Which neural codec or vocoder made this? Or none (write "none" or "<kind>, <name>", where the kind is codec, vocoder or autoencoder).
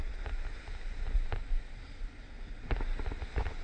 none